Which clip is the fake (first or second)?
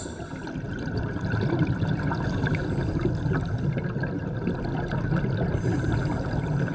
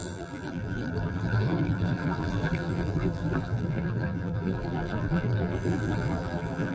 second